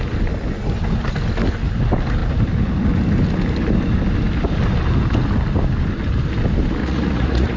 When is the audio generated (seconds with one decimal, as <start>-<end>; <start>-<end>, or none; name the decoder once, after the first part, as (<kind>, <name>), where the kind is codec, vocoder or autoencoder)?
6.8-7.6 (vocoder, Vocos)